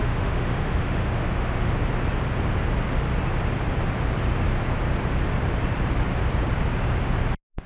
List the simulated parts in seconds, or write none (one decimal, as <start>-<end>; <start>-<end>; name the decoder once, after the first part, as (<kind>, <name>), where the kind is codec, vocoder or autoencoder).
0.0-1.8 (autoencoder, DAC-VAE)